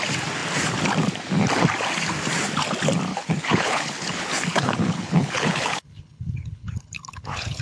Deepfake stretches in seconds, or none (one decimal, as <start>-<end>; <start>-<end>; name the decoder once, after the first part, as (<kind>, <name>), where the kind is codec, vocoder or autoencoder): 3.1-7.6 (codec, HILCodec)